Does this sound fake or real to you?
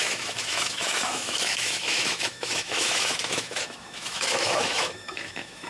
fake